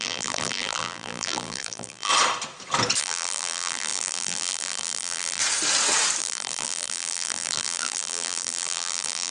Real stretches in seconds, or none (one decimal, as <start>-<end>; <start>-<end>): 2.1-3.0; 5.4-6.2